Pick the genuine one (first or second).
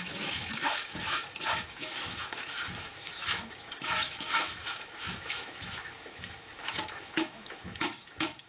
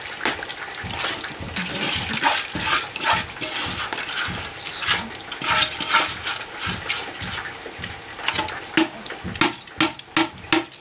second